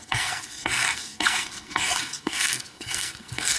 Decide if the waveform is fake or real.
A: fake